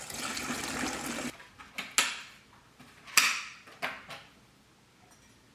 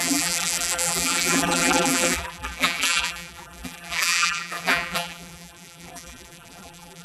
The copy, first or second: second